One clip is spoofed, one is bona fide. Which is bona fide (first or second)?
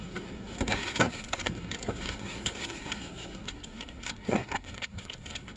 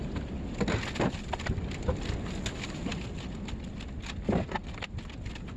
second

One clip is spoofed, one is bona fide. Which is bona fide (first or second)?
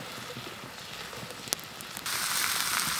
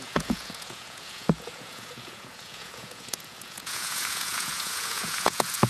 first